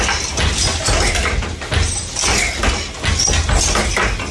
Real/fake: real